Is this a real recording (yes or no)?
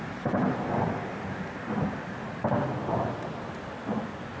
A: yes